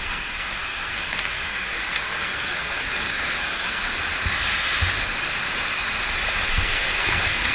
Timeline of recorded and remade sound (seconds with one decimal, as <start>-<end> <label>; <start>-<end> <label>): 0.0-3.9 remade; 3.9-6.5 recorded; 6.5-7.5 remade